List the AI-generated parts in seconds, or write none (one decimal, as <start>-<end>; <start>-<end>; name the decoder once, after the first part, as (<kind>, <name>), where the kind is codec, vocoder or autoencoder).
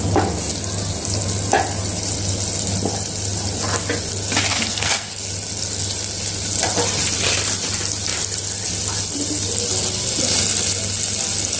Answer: 4.5-5.2 (codec, SNAC)